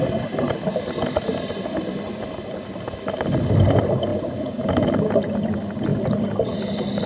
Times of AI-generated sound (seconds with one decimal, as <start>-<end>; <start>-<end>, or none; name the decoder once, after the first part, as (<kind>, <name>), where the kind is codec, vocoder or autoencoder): 0.0-4.1 (vocoder, BigVGAN v2); 4.9-5.9; 6.6-7.1